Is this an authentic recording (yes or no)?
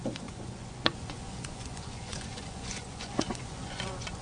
no